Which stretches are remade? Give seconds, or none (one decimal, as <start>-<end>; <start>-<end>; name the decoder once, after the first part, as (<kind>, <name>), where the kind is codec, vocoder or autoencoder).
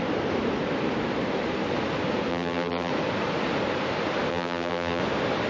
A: 2.3-2.9 (vocoder, BigVGAN v2); 4.3-5.0